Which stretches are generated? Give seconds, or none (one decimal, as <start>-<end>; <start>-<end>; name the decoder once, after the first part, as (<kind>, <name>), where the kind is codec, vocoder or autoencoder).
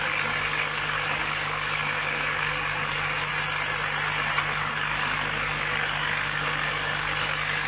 0.0-3.3 (codec, DAC); 4.4-7.7